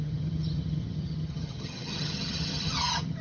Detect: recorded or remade remade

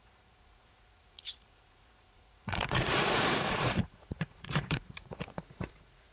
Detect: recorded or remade remade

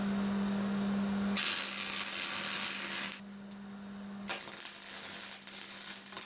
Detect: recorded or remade recorded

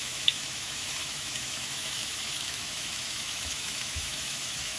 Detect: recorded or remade remade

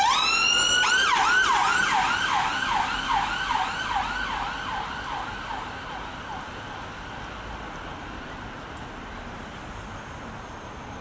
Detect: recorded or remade recorded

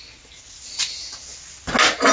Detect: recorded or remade recorded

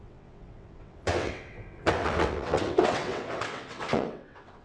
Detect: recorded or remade remade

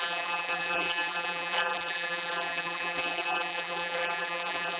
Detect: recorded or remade remade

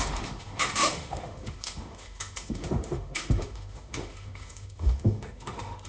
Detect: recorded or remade remade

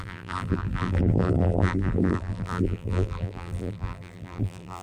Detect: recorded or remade remade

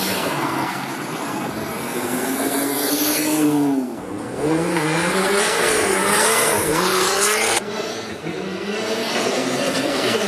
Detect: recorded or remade remade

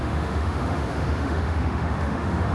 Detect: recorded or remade remade